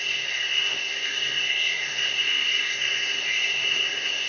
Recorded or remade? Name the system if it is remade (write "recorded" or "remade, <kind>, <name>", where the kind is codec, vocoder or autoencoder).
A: remade, codec, SNAC